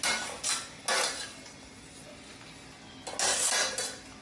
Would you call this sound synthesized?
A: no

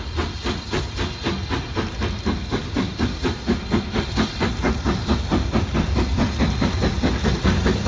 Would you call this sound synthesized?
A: no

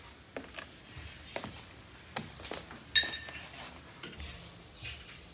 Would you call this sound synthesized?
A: no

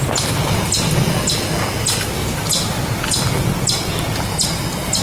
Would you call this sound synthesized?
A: no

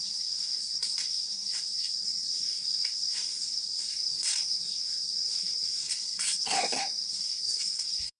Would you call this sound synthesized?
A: yes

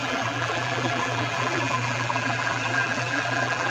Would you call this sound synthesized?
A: yes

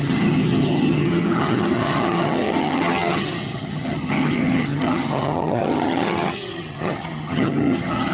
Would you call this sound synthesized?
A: yes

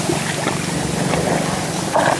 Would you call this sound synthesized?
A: no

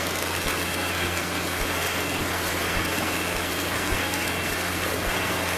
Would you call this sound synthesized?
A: yes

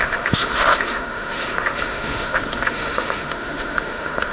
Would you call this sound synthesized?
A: yes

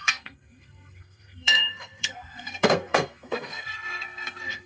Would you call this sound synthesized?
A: yes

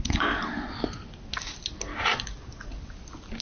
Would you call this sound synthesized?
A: no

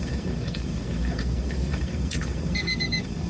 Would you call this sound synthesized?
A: yes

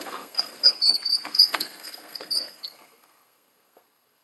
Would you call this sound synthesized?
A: yes